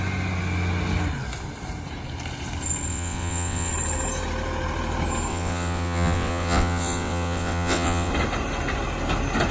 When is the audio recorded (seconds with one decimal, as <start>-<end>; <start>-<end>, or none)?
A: 0.0-2.9; 3.7-5.3; 8.1-9.5